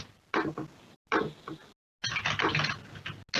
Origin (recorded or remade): recorded